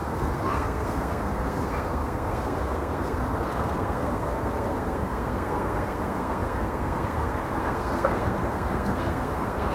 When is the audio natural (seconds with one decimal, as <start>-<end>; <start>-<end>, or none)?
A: none